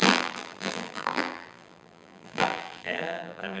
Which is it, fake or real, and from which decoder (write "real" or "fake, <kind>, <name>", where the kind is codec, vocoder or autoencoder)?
fake, vocoder, BigVGAN v2